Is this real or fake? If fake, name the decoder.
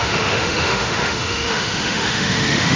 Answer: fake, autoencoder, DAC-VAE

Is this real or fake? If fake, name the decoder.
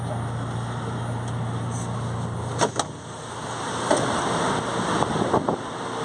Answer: real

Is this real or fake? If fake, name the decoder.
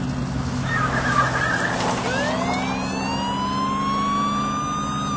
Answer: real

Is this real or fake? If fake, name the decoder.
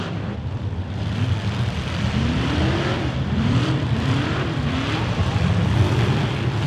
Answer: fake, vocoder, BigVGAN v2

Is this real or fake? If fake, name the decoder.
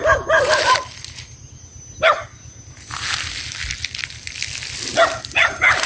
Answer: real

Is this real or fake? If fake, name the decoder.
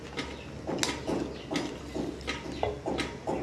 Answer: real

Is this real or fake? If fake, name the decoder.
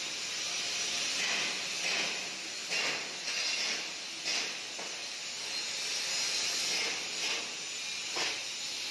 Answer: real